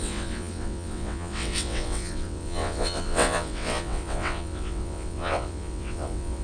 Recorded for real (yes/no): no